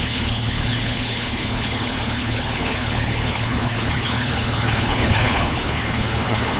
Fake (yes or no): yes